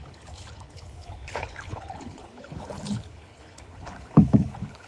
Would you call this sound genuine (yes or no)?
no